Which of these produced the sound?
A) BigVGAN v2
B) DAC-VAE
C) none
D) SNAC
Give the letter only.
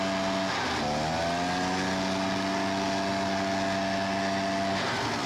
C